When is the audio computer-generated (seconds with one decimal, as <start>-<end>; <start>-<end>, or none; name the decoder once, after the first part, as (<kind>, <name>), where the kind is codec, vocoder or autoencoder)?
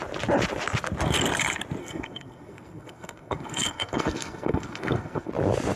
1.8-5.3 (codec, SNAC)